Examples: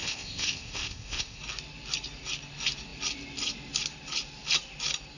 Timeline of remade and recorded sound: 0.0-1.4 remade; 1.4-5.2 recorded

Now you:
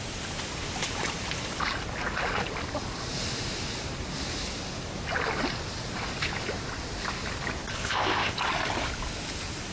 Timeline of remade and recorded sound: 0.0-7.7 recorded; 7.7-8.3 remade; 8.3-9.7 recorded